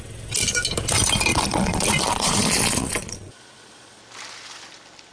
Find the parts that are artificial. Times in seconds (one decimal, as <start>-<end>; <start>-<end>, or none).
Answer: 1.3-4.0